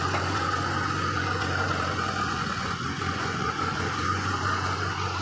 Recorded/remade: remade